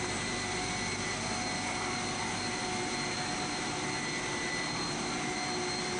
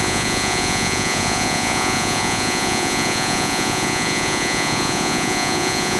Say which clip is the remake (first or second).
second